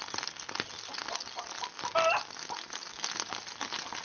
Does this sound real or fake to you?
real